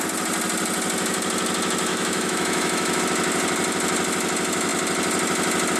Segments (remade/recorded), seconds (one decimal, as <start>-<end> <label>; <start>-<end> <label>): 0.0-1.9 recorded; 1.9-3.0 remade; 3.0-5.8 recorded